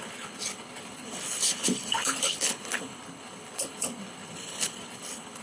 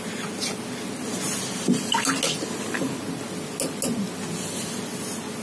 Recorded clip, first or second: second